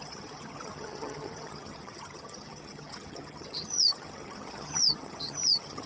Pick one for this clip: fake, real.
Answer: fake